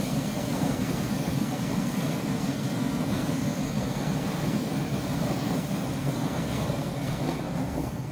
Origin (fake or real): fake